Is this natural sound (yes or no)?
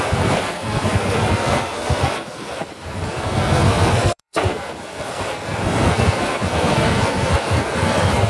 no